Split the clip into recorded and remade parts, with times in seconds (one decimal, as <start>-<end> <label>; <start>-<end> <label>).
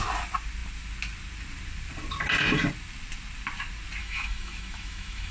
0.0-4.0 recorded; 4.0-5.3 remade